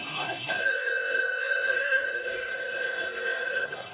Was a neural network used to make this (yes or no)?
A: yes